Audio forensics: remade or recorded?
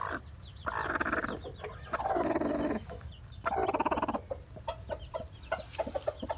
recorded